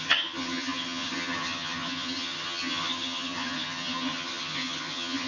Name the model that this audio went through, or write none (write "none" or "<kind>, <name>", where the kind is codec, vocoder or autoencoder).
vocoder, HiFi-GAN